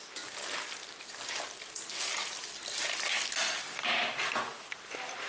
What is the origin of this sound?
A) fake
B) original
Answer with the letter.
B